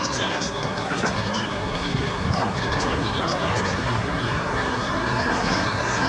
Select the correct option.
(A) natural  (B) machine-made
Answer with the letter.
B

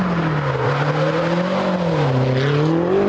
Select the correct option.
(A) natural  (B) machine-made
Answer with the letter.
A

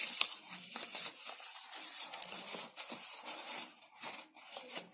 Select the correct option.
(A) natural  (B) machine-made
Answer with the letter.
A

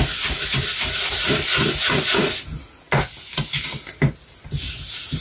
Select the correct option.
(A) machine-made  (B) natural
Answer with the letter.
B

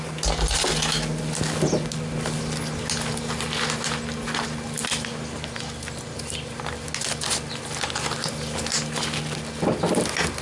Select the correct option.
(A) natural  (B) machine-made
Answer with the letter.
A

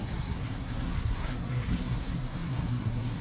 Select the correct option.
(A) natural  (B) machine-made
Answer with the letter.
B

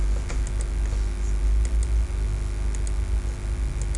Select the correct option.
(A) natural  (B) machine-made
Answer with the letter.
A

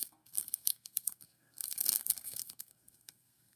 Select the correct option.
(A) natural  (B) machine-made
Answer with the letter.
B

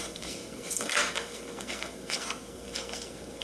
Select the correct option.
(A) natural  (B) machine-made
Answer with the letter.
B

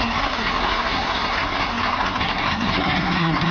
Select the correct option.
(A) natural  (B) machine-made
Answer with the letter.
B